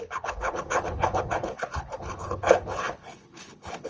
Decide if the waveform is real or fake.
fake